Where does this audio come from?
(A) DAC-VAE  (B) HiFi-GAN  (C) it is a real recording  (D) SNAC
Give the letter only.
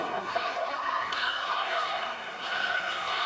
D